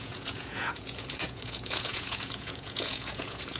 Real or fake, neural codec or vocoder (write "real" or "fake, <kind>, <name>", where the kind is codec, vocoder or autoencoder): fake, vocoder, Vocos